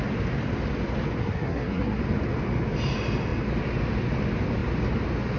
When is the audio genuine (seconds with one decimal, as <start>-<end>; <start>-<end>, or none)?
0.0-1.2; 2.0-5.4